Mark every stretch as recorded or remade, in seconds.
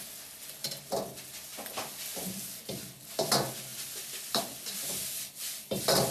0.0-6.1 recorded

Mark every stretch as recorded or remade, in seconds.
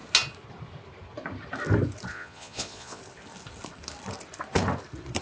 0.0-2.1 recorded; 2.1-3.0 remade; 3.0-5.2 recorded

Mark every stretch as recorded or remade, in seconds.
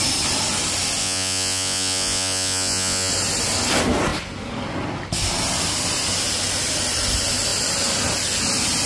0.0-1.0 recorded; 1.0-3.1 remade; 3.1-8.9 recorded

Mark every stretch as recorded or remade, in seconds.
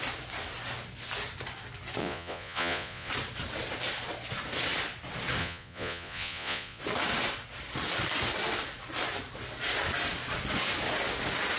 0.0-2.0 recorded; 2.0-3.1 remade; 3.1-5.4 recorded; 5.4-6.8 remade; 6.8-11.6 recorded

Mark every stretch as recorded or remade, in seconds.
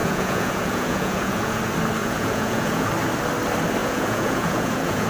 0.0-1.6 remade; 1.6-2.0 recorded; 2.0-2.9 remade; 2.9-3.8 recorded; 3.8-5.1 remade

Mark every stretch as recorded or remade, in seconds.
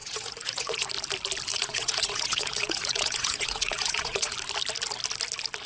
0.0-0.9 remade; 0.9-1.5 recorded; 1.5-4.3 remade; 4.3-5.7 recorded